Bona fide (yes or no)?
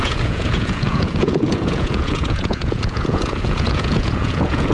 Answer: no